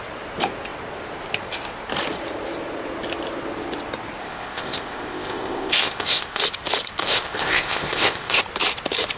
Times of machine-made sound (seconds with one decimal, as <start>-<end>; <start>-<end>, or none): 4.2-6.4; 7.0-8.4